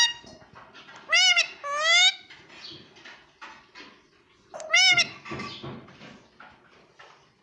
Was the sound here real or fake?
real